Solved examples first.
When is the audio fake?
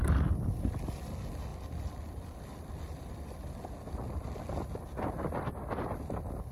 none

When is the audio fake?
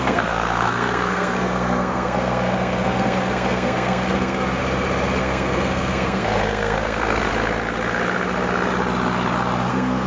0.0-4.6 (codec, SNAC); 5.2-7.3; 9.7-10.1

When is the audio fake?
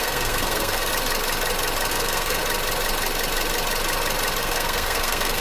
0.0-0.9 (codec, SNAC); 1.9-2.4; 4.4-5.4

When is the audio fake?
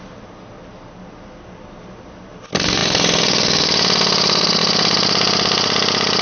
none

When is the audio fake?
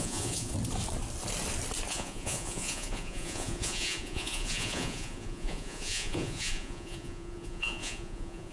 0.0-0.5 (vocoder, Vocos); 1.9-8.5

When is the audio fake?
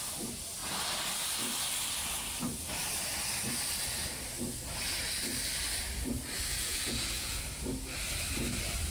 6.5-7.4 (vocoder, Vocos)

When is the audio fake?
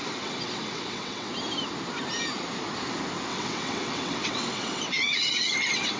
0.0-1.3 (vocoder, WaveNeXt); 3.3-6.0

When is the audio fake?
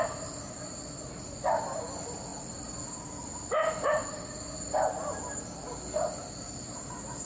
none